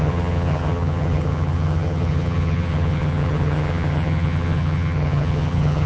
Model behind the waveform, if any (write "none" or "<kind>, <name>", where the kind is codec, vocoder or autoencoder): vocoder, HiFi-GAN